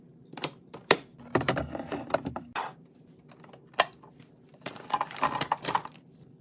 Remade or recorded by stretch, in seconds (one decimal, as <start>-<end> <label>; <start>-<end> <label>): 0.0-1.1 remade; 1.1-3.6 recorded; 3.6-6.4 remade

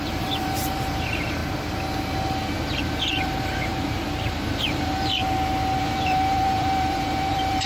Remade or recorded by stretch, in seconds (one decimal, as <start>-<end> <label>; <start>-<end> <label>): 0.0-1.4 remade; 1.4-3.1 recorded; 3.1-3.7 remade; 3.7-4.3 recorded; 4.3-5.2 remade; 5.2-5.8 recorded; 5.8-7.7 remade

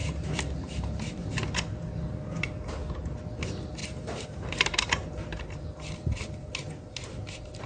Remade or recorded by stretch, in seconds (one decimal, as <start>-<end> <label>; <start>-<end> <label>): 0.0-1.3 remade; 1.3-3.8 recorded; 3.8-5.4 remade; 5.4-7.7 recorded

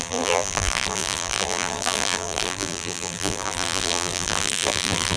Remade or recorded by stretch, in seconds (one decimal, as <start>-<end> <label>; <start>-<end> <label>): 0.0-5.2 remade

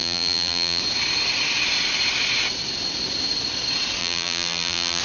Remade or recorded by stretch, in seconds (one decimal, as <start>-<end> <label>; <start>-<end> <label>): 0.0-0.8 remade; 0.8-4.0 recorded; 4.0-5.0 remade